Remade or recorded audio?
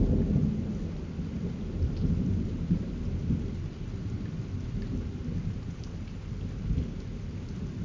recorded